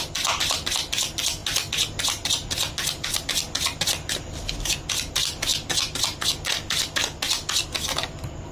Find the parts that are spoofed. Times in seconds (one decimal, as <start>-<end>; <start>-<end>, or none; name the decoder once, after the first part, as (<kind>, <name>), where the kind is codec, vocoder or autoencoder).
none